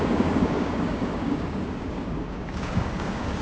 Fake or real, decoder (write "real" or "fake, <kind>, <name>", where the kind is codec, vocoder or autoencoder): fake, codec, DAC